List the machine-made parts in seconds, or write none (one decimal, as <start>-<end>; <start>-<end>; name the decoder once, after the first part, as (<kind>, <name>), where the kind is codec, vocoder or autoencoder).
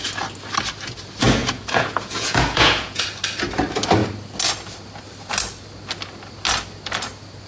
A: 1.4-3.0 (vocoder, Vocos)